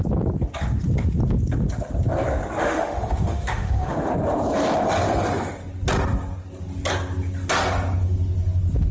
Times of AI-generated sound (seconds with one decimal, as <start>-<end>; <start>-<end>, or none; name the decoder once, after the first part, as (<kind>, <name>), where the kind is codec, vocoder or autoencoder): 2.6-4.1 (autoencoder, DAC-VAE)